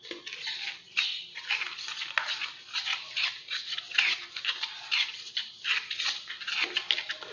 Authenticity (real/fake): real